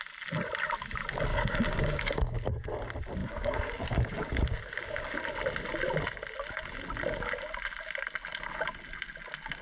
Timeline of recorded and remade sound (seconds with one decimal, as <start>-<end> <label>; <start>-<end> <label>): 0.0-1.3 recorded; 1.3-2.7 remade; 2.7-3.2 recorded; 3.2-5.2 remade; 5.2-9.6 recorded